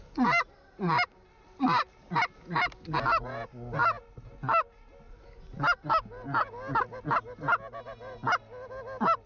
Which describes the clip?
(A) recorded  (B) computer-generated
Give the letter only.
A